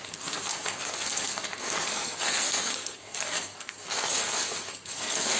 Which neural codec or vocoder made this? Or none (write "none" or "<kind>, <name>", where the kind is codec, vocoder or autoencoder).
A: codec, SNAC